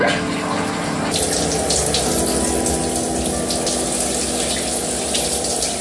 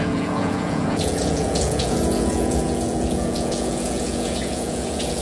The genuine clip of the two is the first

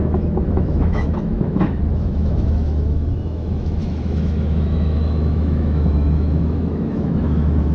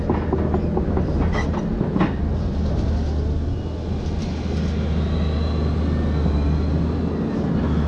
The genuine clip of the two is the second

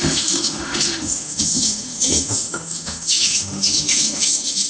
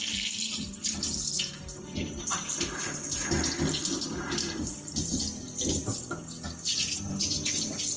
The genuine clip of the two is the second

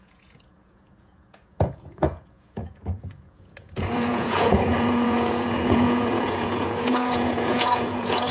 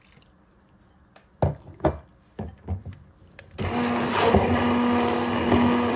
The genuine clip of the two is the second